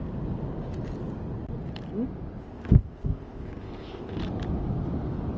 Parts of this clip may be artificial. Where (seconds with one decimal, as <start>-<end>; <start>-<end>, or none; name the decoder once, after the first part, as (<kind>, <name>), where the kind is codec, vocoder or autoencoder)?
2.4-4.2 (codec, ZipCodec)